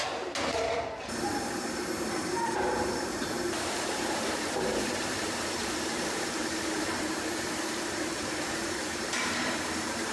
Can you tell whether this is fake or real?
fake